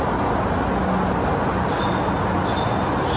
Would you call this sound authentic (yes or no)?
yes